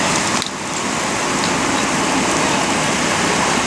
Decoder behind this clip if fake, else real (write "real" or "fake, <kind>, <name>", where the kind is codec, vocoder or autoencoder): real